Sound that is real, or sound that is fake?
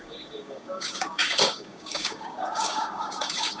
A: fake